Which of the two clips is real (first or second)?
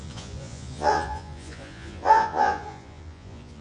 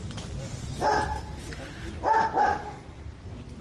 second